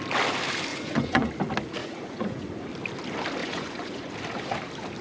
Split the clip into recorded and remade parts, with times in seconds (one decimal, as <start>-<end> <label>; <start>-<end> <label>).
0.0-0.7 recorded; 0.7-1.3 remade; 1.3-1.8 recorded; 1.8-2.7 remade; 2.7-3.4 recorded; 3.4-4.1 remade; 4.1-5.0 recorded